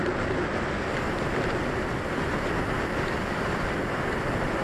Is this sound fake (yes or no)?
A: no